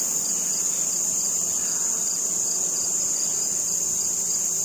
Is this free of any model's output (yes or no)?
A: yes